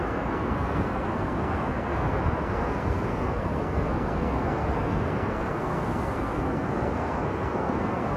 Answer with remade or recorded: remade